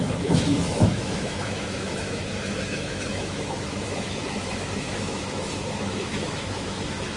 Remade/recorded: remade